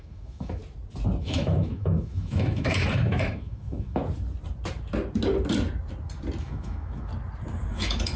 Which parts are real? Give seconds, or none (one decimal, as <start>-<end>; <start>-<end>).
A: 0.6-1.2; 4.0-6.4; 7.1-7.7